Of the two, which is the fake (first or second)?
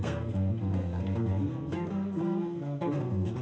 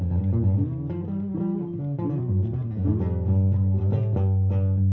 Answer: first